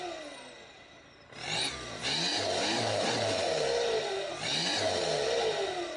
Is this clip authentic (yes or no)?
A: yes